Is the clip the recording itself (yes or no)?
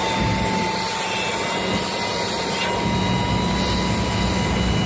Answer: yes